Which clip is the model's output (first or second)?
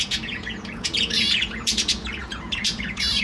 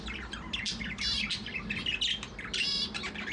first